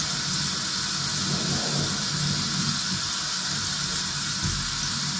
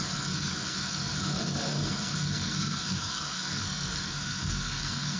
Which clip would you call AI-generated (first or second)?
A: second